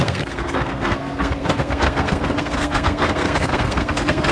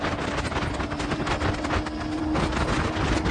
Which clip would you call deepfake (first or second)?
first